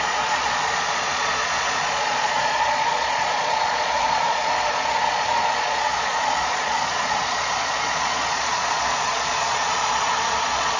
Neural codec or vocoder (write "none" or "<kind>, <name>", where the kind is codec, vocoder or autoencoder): vocoder, Vocos